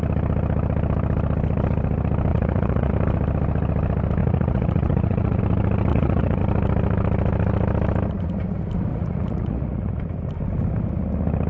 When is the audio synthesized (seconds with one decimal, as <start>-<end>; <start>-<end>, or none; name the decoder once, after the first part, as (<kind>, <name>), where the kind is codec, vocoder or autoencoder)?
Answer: 2.3-2.9 (vocoder, Vocos); 4.2-5.4; 5.9-6.4; 8.9-10.0